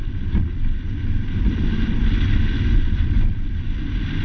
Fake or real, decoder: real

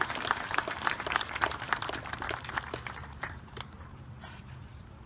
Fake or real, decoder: fake, vocoder, BigVGAN v2